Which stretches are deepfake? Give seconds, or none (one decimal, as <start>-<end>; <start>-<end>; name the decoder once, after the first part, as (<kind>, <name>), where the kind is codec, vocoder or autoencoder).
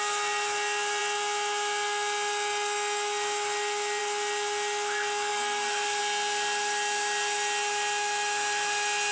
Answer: none